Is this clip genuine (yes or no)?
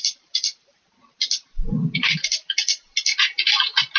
yes